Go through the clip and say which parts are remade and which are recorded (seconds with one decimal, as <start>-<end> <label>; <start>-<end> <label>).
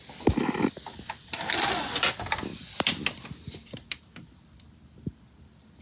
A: 0.0-5.8 recorded